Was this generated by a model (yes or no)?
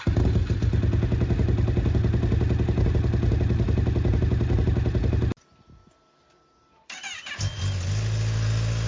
no